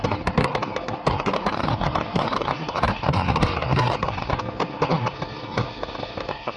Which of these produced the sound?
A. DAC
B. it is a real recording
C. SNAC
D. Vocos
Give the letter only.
C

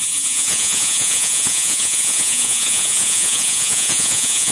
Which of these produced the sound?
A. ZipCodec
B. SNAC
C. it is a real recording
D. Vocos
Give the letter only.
D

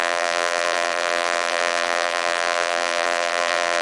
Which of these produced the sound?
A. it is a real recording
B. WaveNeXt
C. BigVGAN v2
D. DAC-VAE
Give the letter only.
C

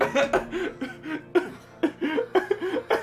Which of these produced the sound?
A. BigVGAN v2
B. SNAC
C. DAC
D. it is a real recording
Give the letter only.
D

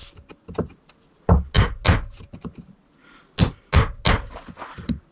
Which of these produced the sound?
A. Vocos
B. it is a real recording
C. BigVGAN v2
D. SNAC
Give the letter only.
B